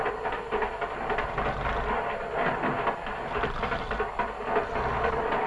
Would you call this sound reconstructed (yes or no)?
no